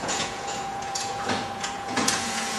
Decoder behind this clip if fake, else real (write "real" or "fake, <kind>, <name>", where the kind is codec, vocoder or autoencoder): fake, vocoder, Vocos